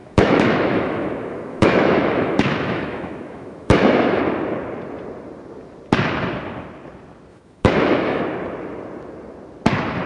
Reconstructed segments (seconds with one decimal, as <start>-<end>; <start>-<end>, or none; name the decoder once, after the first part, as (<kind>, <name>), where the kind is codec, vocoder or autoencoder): 0.0-4.2 (autoencoder, DAC-VAE); 7.3-8.2